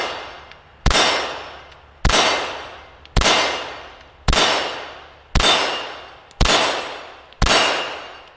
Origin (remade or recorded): recorded